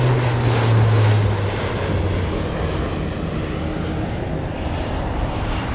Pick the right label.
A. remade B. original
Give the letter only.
B